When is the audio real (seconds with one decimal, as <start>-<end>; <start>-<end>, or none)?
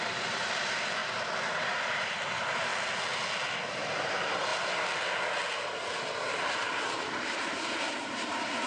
1.0-2.3; 2.7-3.7; 4.5-6.2